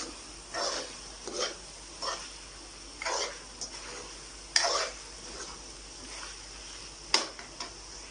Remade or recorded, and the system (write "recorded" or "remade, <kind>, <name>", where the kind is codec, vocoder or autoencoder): recorded